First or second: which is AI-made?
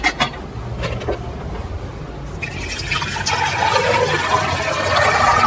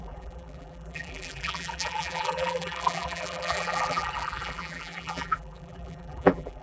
second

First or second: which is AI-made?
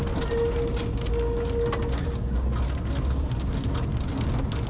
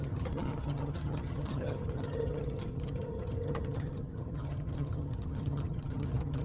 second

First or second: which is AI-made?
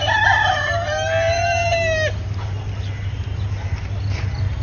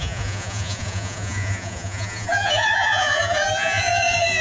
second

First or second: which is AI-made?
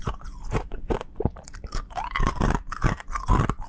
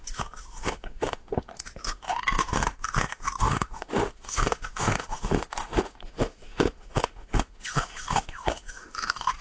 second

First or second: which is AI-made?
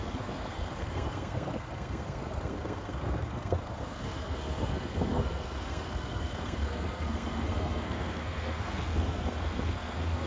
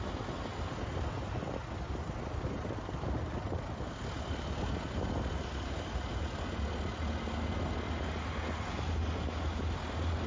first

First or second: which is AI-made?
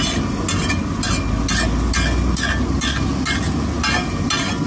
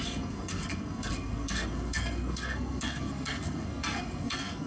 second